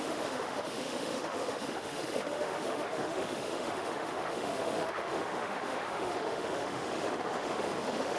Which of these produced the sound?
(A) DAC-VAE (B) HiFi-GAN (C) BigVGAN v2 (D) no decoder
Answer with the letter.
A